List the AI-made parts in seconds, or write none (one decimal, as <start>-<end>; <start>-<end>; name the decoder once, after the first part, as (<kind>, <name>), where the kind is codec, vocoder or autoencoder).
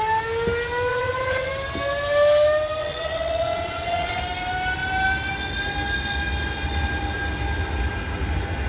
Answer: 0.9-1.5 (vocoder, WaveNeXt); 2.8-4.2